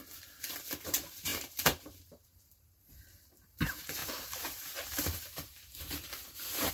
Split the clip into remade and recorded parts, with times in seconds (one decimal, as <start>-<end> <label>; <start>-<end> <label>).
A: 0.0-6.7 remade